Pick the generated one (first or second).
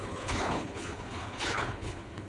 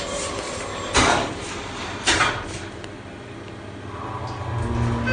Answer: first